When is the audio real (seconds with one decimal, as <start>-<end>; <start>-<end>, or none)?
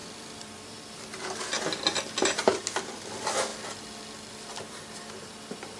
1.4-5.8